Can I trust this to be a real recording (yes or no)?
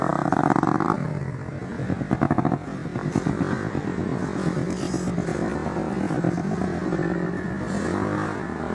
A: yes